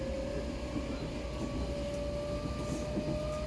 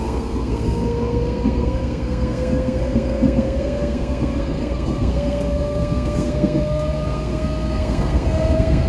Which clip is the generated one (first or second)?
second